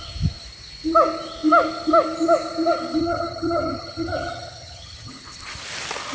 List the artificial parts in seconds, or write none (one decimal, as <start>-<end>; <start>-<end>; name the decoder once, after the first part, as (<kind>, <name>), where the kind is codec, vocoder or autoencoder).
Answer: 3.0-5.1 (vocoder, HiFi-GAN)